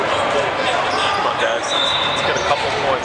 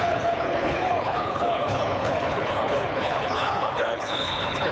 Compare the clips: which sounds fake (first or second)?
second